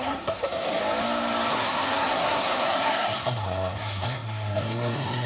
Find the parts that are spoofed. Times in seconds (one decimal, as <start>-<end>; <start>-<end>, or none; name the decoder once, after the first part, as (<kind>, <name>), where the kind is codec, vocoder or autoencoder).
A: 0.0-0.8 (codec, SNAC); 1.5-5.3